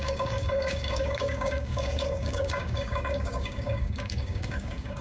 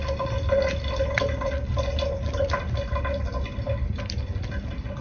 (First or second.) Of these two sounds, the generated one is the first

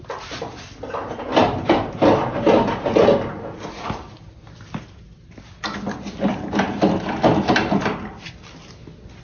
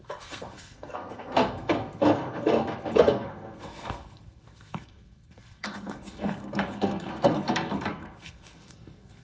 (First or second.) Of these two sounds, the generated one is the second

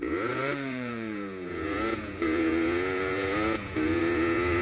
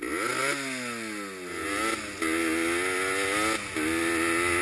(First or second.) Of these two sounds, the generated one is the first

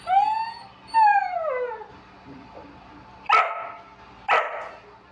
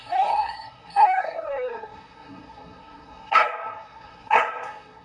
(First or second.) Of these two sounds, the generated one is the second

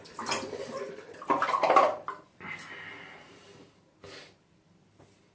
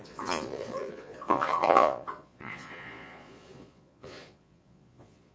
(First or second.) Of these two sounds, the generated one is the second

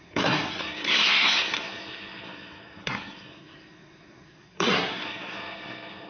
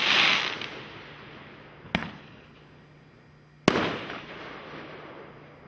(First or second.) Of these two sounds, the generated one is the first